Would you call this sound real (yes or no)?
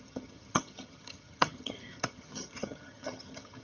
no